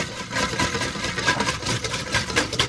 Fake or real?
real